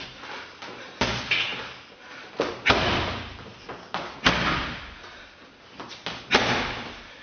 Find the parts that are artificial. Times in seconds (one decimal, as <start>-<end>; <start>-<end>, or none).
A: none